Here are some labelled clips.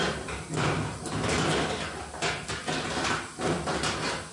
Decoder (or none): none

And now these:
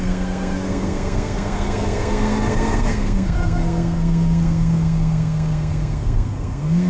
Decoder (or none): codec, SNAC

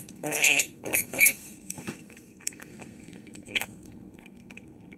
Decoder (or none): codec, SNAC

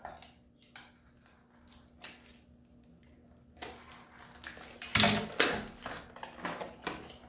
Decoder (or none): none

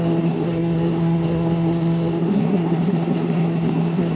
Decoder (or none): codec, SNAC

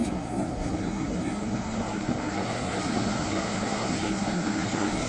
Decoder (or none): codec, SNAC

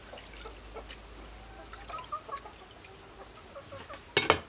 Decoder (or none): none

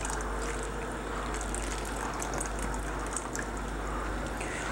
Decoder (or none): none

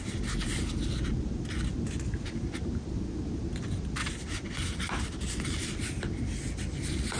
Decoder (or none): none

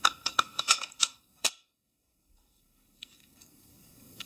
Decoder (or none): codec, SNAC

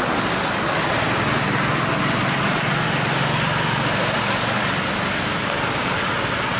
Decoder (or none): none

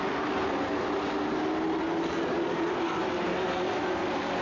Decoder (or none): none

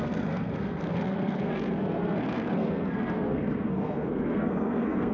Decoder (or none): codec, SNAC